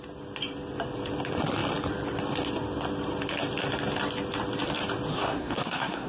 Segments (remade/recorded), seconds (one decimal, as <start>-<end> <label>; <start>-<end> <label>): 0.0-5.1 recorded; 5.1-6.1 remade